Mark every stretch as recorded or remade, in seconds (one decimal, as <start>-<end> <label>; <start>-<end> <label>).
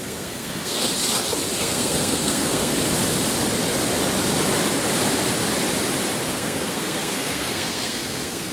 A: 0.0-0.9 remade; 0.9-1.6 recorded; 1.6-2.7 remade; 2.7-6.3 recorded; 6.3-8.5 remade